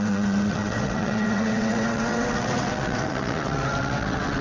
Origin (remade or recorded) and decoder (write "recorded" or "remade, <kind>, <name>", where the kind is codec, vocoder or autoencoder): remade, vocoder, WaveNeXt